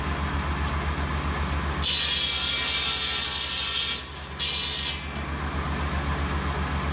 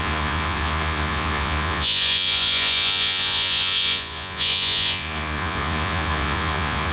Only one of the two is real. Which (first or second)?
first